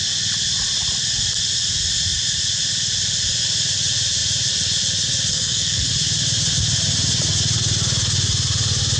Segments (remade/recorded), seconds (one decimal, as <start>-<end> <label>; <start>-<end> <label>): 0.0-5.3 recorded; 5.3-5.9 remade; 5.9-9.0 recorded